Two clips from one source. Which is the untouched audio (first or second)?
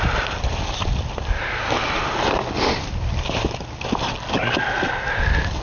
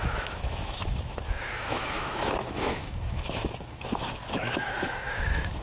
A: first